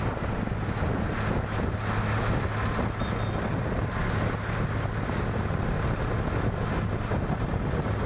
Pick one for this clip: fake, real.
real